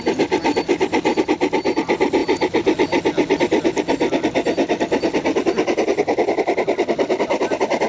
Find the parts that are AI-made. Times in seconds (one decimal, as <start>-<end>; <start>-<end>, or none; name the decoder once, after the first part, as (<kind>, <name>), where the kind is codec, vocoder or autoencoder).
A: none